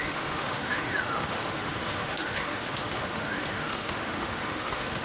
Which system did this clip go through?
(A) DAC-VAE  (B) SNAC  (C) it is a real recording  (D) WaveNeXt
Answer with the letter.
A